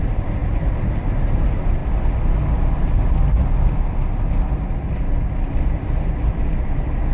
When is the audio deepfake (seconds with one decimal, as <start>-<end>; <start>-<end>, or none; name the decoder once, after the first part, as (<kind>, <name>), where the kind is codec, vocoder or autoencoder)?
0.0-1.8 (vocoder, BigVGAN v2); 6.1-7.1